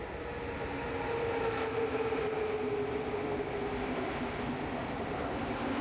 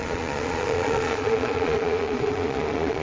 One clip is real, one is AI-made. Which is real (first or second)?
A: first